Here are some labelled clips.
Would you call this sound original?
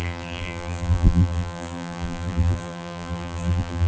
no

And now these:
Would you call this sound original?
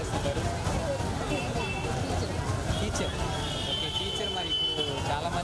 yes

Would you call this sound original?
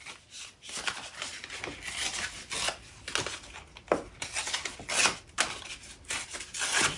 yes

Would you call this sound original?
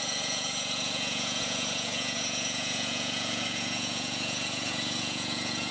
no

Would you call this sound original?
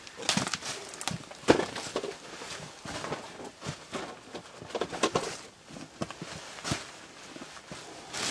yes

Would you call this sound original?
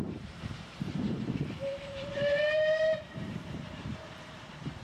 no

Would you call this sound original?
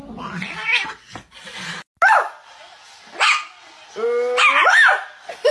yes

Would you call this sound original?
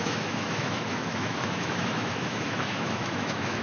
no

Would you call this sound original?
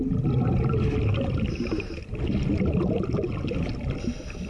yes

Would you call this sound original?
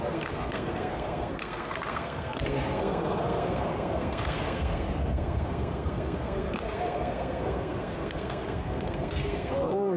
no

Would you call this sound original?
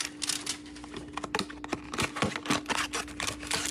yes